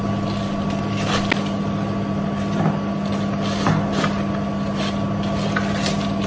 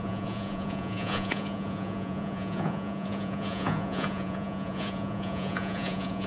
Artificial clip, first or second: second